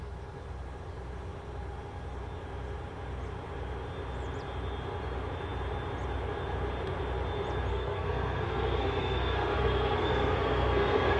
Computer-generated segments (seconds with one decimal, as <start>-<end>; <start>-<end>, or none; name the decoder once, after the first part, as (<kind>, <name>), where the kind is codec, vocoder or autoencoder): 7.7-11.2 (codec, SNAC)